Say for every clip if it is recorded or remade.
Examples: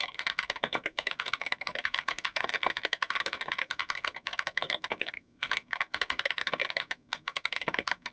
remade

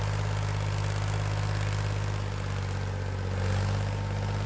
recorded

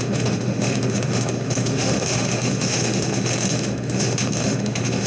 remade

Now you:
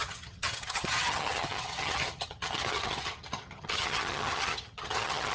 remade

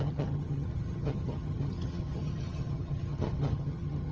remade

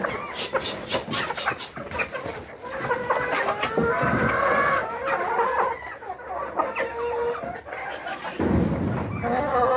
recorded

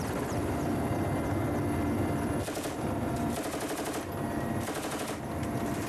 recorded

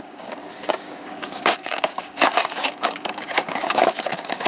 remade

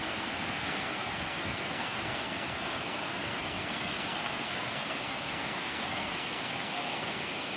remade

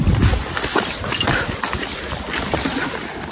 recorded